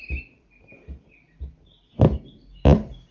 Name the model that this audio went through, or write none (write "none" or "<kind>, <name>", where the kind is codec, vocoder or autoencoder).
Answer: none